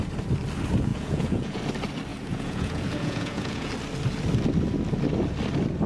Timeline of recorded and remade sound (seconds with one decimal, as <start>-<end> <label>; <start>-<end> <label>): 0.0-0.9 recorded; 0.9-1.6 remade; 1.6-2.1 recorded; 2.1-3.7 remade; 3.7-5.9 recorded